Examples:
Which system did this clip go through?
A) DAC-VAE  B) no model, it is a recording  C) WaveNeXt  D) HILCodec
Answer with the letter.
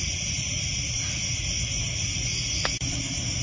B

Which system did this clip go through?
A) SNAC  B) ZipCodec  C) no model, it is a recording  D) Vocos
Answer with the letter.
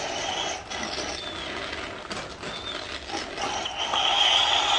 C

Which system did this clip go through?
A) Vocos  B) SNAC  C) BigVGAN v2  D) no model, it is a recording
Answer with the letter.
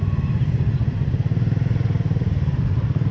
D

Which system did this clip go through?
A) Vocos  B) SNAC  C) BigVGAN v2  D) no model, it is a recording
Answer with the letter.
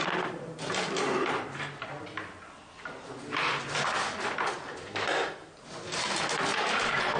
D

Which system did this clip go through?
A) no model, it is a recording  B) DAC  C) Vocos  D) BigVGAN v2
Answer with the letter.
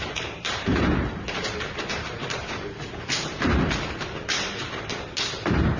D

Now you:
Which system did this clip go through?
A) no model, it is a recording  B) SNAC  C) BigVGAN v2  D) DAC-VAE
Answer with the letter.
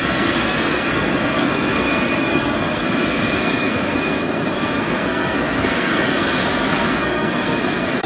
B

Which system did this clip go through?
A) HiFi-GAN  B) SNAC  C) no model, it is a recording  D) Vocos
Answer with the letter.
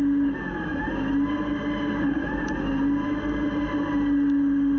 C